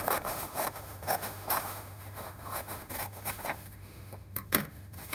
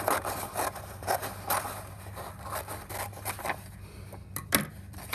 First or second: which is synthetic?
first